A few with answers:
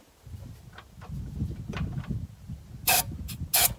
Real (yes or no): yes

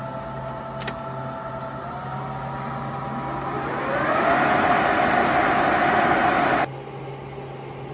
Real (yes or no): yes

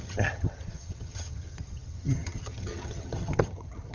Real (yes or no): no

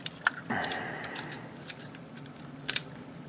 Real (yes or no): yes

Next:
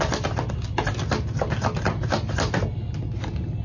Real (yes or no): yes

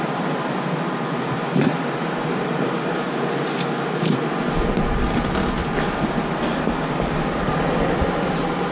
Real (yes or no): no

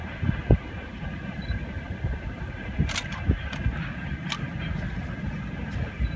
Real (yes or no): yes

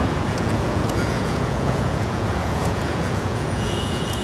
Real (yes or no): no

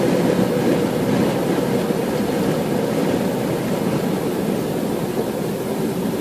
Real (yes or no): no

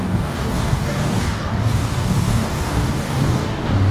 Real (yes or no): no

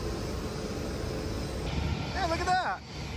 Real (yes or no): yes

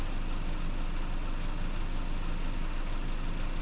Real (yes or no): yes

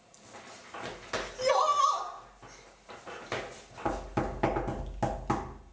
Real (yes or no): yes